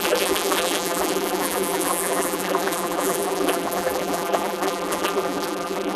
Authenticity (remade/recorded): remade